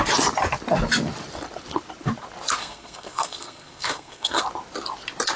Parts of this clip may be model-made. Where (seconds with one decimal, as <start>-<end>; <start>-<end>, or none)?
2.6-4.4